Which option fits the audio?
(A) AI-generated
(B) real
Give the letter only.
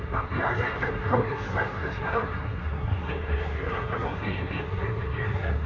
A